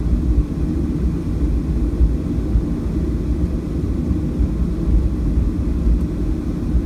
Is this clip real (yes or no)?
yes